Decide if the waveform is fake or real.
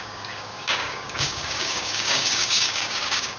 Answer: fake